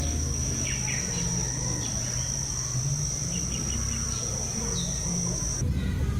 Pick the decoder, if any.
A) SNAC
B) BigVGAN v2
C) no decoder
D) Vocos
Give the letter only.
C